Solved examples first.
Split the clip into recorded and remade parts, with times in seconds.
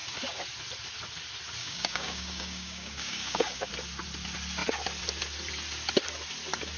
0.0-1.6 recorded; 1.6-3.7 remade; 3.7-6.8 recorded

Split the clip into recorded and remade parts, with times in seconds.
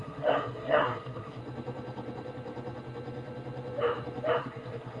0.0-1.4 remade; 1.4-4.4 recorded; 4.4-5.0 remade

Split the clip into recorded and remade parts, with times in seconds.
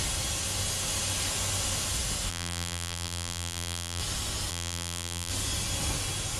0.0-2.3 recorded; 2.3-4.0 remade; 4.0-4.5 recorded; 4.5-5.3 remade; 5.3-6.4 recorded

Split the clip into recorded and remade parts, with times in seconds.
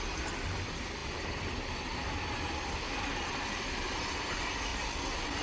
0.0-5.4 recorded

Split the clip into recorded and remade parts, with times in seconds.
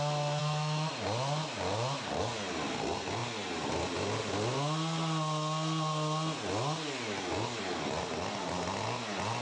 0.0-0.4 recorded; 0.4-0.9 remade; 0.9-9.4 recorded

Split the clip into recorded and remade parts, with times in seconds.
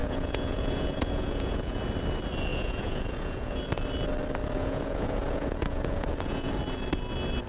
0.0-1.8 remade; 1.8-2.5 recorded; 2.5-3.6 remade; 3.6-4.4 recorded; 4.4-6.5 remade; 6.5-7.5 recorded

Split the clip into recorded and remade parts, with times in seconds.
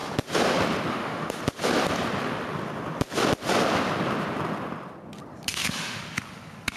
0.0-0.9 recorded; 0.9-1.4 remade; 1.4-5.5 recorded; 5.5-6.0 remade; 6.0-6.8 recorded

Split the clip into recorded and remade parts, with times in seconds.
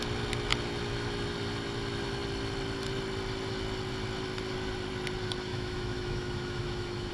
0.0-5.5 recorded; 5.5-7.1 remade